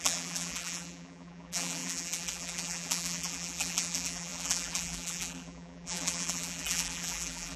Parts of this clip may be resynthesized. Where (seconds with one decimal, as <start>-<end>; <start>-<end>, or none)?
0.0-7.6